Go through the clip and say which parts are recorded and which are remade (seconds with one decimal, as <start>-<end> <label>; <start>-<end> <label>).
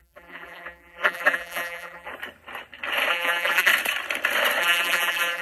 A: 0.0-2.1 remade; 2.1-3.1 recorded; 3.1-3.7 remade; 3.7-4.6 recorded; 4.6-5.4 remade